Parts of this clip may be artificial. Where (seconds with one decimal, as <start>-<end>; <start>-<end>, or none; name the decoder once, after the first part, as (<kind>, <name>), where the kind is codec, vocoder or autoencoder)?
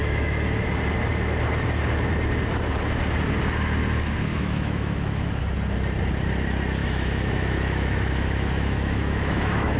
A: 0.0-0.7 (autoencoder, DAC-VAE); 4.3-5.4; 6.8-9.8